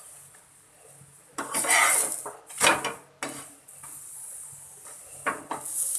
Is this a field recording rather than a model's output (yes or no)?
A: yes